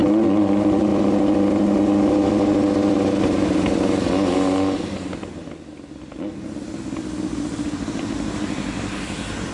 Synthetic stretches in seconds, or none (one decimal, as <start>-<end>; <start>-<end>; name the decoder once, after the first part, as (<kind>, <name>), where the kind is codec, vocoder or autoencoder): none